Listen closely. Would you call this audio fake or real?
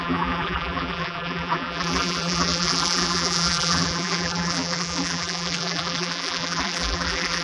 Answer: fake